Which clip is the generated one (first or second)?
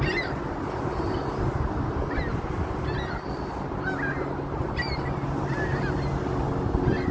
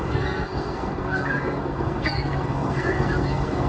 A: second